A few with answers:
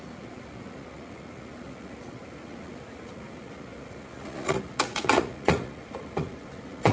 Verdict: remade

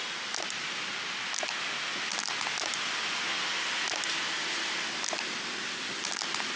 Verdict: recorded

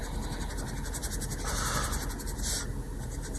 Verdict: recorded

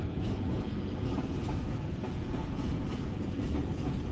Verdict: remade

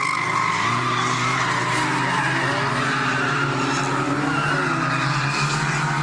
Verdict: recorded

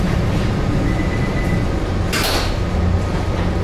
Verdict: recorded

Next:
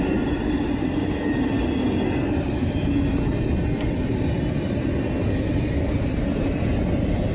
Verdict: recorded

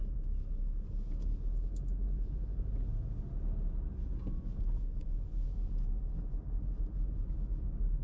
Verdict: recorded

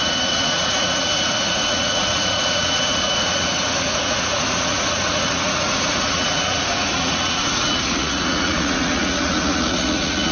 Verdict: remade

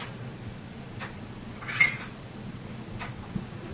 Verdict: remade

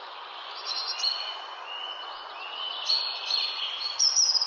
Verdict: remade